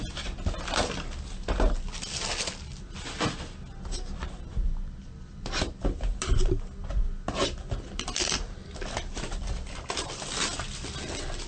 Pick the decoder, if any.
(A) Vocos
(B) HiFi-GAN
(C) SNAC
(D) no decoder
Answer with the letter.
D